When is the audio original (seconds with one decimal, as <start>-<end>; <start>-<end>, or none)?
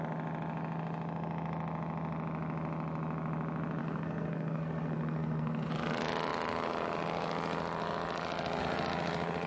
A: 0.0-3.8; 5.7-9.5